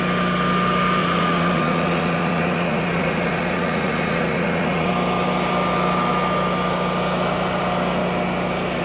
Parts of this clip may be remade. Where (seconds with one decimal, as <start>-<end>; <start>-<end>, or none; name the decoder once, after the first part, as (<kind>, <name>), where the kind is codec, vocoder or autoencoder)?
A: 1.0-4.9 (vocoder, Vocos)